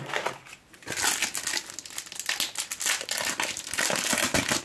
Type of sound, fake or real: real